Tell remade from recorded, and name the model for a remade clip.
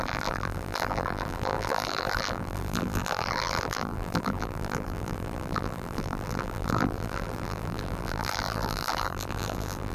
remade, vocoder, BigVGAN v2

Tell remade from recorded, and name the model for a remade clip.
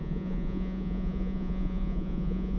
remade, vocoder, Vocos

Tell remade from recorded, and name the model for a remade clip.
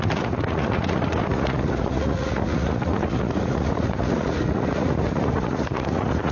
remade, vocoder, Vocos